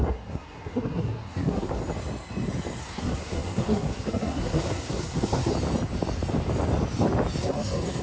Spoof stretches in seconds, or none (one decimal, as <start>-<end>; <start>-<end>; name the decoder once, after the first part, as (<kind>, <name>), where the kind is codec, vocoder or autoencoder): 0.0-1.8 (codec, SNAC); 2.8-5.5; 7.4-8.0